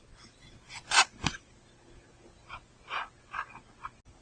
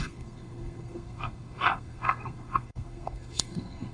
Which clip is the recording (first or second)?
first